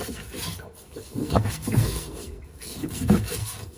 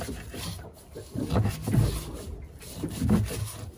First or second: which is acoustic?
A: second